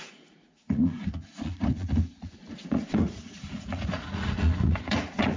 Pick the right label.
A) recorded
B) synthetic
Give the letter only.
B